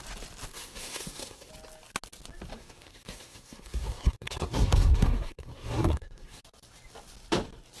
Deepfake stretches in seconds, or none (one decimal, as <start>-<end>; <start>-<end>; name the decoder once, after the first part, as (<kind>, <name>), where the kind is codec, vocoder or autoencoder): 0.5-1.5 (codec, SNAC); 2.5-6.4